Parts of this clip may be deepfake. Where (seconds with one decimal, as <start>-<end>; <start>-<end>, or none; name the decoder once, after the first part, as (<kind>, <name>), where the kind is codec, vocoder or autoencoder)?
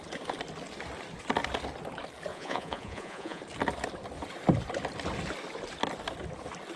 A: 2.3-3.4 (vocoder, Vocos)